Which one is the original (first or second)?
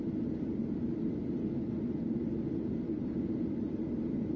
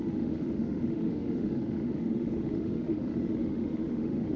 first